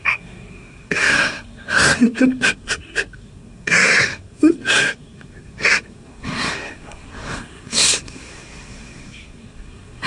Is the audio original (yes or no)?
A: no